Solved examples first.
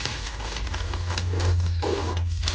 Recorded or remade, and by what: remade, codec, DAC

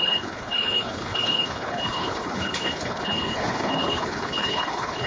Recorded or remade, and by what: remade, codec, HILCodec